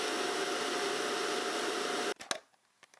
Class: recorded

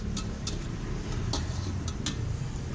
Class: recorded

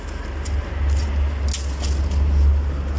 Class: recorded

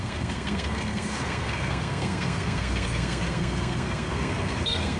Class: remade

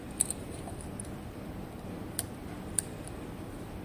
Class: recorded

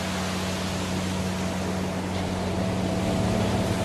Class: recorded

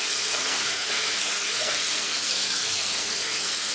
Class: remade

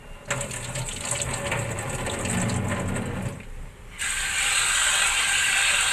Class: recorded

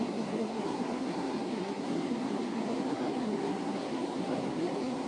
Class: remade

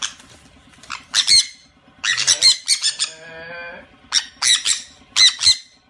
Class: recorded